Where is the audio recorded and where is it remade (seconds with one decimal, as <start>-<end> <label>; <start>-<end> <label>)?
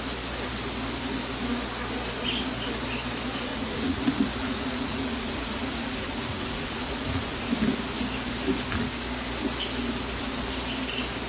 0.0-3.5 recorded; 3.5-4.0 remade; 4.0-4.4 recorded; 4.4-7.6 remade; 7.6-11.3 recorded